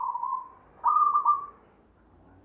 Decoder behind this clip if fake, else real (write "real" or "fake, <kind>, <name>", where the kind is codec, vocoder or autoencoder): real